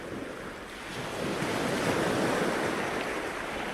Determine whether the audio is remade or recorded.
recorded